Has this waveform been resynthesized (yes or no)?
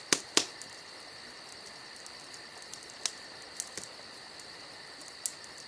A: no